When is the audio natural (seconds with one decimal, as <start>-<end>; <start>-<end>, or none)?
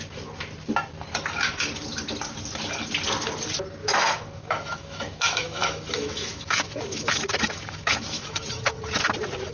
0.0-3.8; 8.8-9.5